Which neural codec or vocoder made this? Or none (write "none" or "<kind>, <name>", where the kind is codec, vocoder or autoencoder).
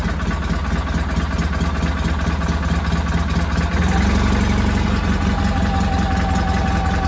none